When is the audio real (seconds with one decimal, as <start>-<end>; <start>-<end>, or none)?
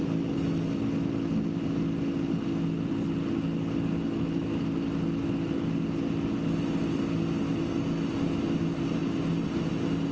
0.0-9.0; 9.7-10.1